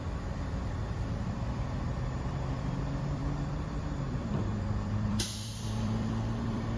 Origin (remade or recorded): remade